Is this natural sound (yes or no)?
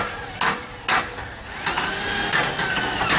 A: yes